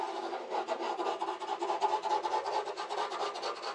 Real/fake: real